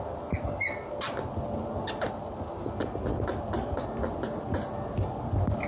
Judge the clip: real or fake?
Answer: real